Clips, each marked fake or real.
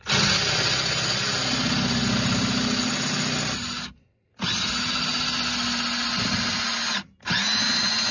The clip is real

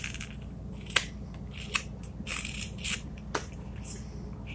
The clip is real